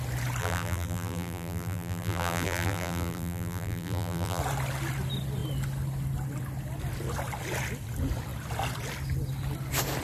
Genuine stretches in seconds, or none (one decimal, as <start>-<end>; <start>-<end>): 0.0-0.4; 4.4-10.0